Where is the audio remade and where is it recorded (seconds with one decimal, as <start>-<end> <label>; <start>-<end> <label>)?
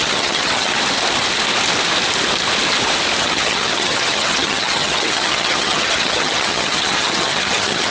0.0-0.7 remade; 0.7-3.2 recorded; 3.2-7.9 remade